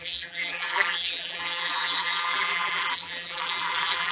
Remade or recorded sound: remade